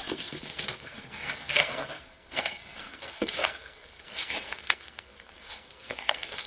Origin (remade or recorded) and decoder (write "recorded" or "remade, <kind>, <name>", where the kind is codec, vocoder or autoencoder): remade, codec, SNAC